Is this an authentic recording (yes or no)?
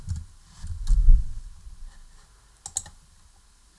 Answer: yes